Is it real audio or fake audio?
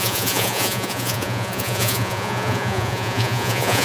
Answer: fake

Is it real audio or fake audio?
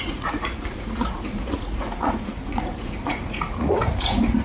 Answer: fake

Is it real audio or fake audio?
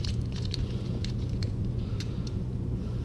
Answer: fake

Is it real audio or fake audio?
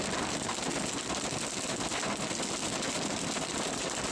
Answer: real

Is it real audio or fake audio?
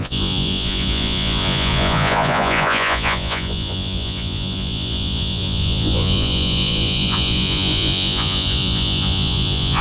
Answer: fake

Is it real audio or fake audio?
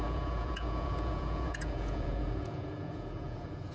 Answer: fake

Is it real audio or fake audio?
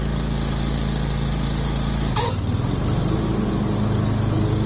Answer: real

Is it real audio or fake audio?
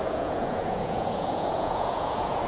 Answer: fake